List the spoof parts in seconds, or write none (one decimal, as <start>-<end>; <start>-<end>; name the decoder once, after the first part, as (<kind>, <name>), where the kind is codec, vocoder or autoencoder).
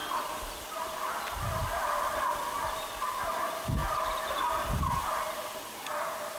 none